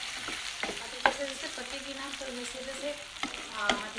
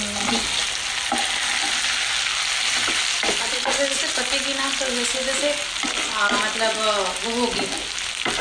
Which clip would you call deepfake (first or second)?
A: first